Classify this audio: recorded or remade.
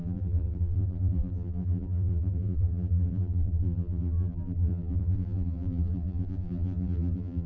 remade